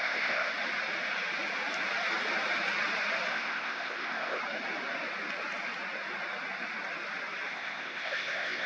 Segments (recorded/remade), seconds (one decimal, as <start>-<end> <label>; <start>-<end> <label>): 0.0-0.5 remade; 0.5-3.3 recorded; 3.3-4.4 remade; 4.4-7.5 recorded; 7.5-8.7 remade